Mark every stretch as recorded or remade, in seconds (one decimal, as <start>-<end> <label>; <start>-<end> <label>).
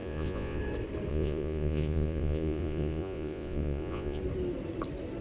0.0-0.6 remade; 0.6-1.1 recorded; 1.1-4.2 remade; 4.2-5.2 recorded